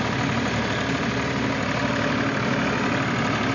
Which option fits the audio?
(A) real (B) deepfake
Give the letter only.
A